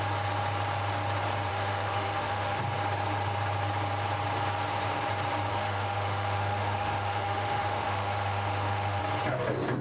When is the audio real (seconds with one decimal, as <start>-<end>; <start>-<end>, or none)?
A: 0.0-1.5; 2.6-5.5; 9.0-9.8